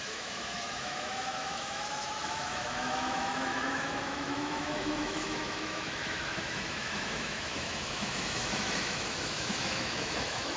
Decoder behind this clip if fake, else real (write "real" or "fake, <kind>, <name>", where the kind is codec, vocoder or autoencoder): fake, autoencoder, DAC-VAE